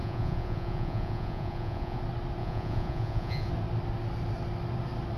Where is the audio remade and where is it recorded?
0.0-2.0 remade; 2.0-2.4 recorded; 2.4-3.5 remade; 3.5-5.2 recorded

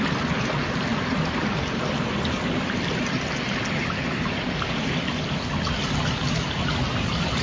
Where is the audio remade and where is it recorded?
0.0-7.4 recorded